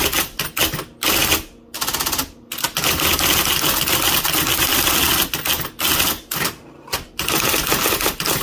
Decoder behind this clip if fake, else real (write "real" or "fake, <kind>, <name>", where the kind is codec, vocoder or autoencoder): real